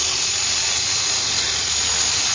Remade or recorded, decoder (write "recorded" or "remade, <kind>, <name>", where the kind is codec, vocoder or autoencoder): recorded